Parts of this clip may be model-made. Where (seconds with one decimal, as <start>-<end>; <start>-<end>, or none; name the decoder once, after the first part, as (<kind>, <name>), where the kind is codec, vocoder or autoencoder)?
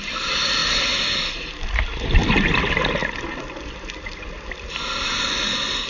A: none